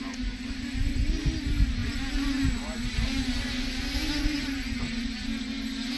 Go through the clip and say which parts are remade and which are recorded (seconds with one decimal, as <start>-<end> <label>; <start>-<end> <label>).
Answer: 0.0-6.0 recorded